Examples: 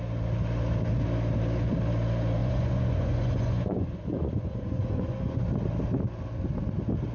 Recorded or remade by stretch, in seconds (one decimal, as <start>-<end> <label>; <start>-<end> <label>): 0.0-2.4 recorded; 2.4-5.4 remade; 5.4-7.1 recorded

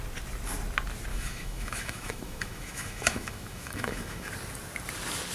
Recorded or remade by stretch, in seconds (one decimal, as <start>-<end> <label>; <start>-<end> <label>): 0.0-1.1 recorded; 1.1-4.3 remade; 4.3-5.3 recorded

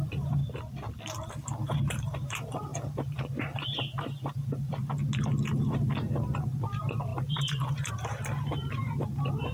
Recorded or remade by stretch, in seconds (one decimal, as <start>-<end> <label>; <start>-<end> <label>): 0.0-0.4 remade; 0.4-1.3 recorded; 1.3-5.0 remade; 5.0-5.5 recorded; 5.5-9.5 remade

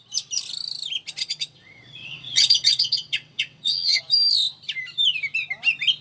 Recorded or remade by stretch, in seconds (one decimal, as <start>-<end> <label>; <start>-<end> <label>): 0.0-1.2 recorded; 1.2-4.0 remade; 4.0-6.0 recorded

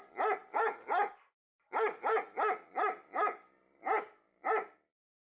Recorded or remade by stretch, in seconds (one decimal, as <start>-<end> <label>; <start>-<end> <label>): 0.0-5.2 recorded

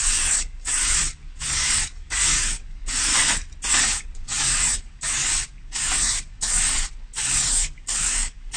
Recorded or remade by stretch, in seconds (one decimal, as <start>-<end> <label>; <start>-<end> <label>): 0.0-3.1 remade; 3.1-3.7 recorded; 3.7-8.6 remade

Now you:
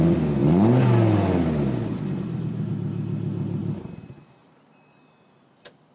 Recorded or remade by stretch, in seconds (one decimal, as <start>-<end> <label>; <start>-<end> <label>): 0.0-5.9 recorded